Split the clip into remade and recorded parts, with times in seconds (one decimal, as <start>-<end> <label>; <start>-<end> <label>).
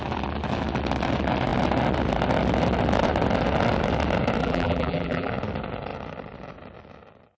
0.0-4.4 recorded; 4.4-5.3 remade; 5.3-7.4 recorded